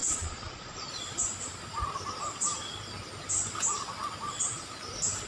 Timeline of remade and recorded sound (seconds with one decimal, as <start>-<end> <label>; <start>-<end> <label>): 0.0-0.9 remade; 0.9-5.3 recorded